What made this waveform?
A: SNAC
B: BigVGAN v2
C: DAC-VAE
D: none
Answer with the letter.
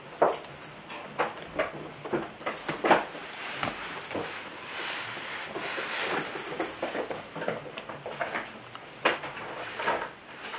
D